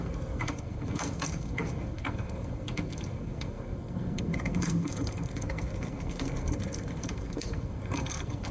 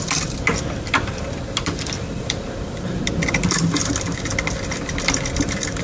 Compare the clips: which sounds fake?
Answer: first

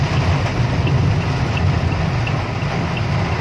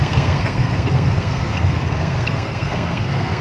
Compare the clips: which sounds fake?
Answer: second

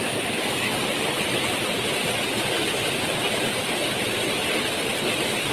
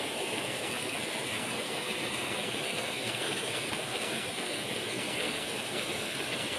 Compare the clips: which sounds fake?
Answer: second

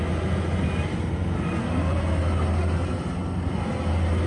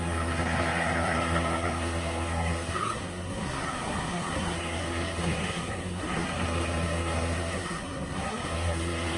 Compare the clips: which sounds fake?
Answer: second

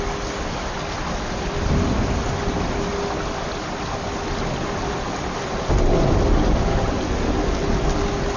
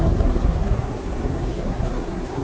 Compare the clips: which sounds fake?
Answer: second